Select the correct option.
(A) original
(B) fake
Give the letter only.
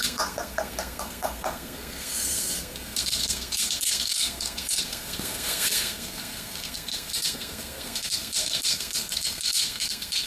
B